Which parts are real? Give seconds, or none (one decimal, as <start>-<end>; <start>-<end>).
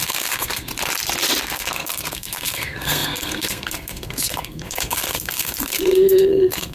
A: 0.7-1.4